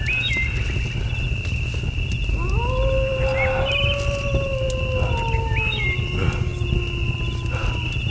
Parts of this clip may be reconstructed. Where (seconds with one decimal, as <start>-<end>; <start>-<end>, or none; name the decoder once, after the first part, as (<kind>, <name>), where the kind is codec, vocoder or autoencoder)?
3.1-3.8 (vocoder, BigVGAN v2)